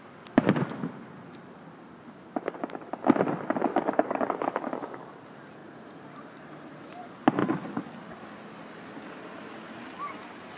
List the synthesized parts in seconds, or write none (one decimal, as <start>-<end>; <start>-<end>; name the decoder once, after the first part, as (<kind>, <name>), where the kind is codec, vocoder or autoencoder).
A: 3.7-5.1 (codec, DAC)